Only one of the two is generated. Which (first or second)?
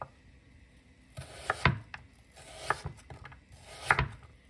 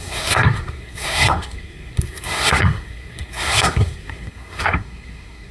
second